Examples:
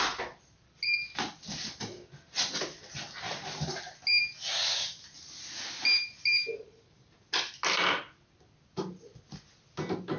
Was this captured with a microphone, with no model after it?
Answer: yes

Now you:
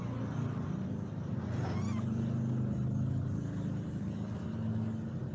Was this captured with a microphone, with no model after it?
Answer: yes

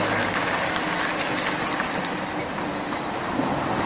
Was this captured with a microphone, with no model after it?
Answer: yes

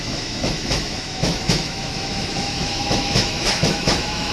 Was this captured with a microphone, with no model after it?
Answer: no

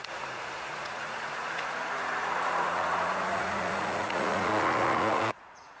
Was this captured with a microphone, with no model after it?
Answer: no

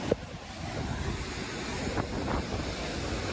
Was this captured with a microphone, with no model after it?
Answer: yes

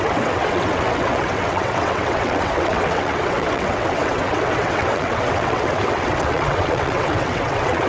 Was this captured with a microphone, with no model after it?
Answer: no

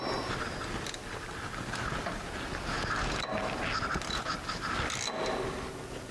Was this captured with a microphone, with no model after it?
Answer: yes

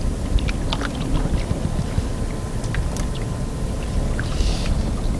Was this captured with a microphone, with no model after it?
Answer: yes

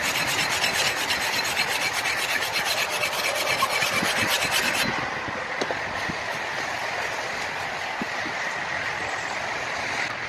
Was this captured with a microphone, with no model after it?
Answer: yes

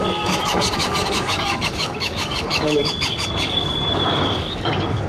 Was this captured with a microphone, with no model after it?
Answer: no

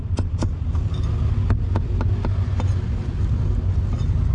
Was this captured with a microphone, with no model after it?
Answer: yes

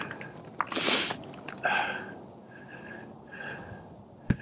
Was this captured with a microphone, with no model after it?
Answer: yes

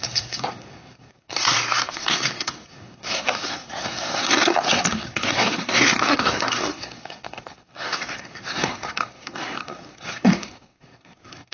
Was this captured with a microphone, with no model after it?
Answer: no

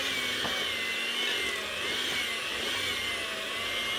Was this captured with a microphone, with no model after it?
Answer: yes